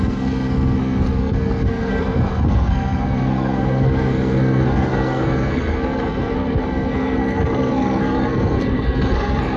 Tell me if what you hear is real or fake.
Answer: fake